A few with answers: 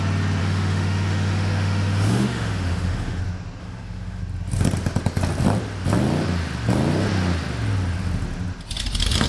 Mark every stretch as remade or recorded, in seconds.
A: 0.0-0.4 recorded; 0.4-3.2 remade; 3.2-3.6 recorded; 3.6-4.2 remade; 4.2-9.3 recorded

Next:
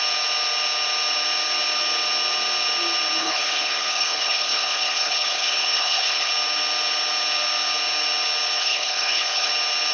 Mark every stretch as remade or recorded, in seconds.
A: 0.0-3.2 recorded; 3.2-6.3 remade; 6.3-8.6 recorded; 8.6-9.5 remade; 9.5-9.9 recorded

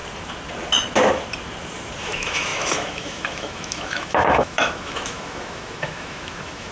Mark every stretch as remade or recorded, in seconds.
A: 0.0-2.0 recorded; 2.0-6.7 remade